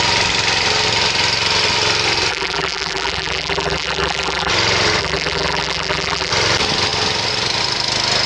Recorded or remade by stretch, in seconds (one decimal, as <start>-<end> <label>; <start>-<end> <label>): 0.0-2.3 recorded; 2.3-4.5 remade; 4.5-5.0 recorded; 5.0-6.3 remade; 6.3-8.3 recorded